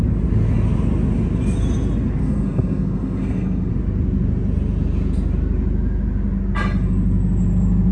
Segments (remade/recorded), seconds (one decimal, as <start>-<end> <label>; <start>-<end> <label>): 0.0-2.2 recorded; 2.2-3.7 remade; 3.7-7.9 recorded